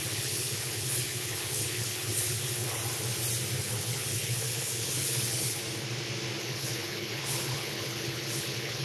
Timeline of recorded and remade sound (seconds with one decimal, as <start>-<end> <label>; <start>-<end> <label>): 0.0-2.8 remade; 2.8-3.6 recorded; 3.6-5.6 remade; 5.6-6.4 recorded; 6.4-8.8 remade